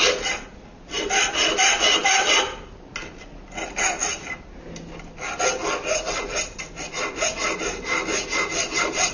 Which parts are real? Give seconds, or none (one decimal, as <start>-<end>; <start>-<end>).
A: 0.0-9.1